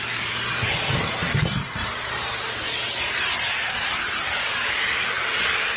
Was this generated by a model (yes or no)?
yes